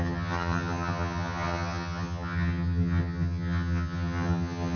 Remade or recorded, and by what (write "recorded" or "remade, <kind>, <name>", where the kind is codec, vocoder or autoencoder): remade, vocoder, HiFi-GAN